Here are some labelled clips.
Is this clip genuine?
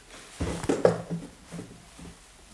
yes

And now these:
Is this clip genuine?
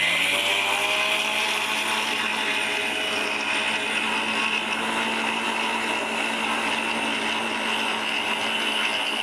yes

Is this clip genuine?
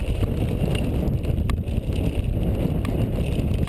yes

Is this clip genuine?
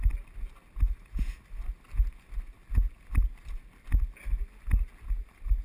yes